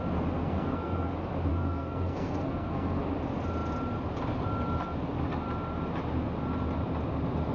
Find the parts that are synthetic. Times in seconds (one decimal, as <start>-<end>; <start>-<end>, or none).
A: 0.4-1.1; 1.5-3.0